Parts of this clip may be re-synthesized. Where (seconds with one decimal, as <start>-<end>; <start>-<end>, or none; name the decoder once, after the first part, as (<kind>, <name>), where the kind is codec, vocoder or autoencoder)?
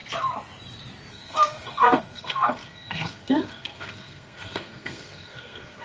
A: 1.1-5.8 (codec, SNAC)